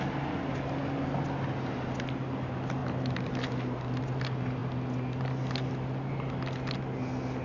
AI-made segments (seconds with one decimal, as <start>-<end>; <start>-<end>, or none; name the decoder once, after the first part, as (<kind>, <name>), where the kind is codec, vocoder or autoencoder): none